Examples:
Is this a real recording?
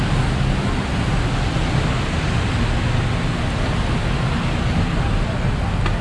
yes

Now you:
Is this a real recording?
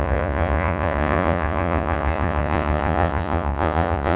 no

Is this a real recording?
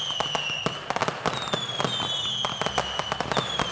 yes